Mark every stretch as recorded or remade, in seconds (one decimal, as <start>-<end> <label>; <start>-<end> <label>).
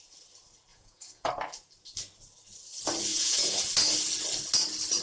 0.0-0.7 recorded; 0.7-1.3 remade; 1.3-3.1 recorded; 3.1-3.7 remade; 3.7-5.0 recorded